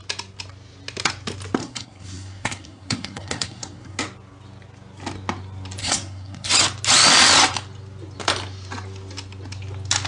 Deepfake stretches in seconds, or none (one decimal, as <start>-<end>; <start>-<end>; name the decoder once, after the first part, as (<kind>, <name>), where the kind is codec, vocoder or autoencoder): 1.6-4.0 (codec, SNAC); 5.8-6.5